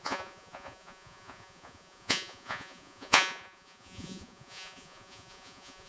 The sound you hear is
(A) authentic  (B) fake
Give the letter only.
B